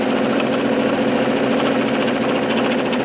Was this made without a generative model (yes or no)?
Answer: yes